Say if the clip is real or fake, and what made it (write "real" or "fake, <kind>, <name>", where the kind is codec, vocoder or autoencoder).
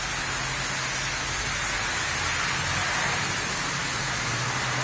real